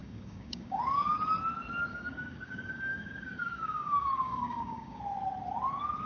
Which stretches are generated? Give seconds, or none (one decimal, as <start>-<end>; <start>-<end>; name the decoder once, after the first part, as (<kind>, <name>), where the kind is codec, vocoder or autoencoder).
0.0-0.8 (codec, DAC); 1.9-5.0